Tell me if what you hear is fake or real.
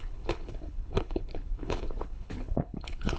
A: fake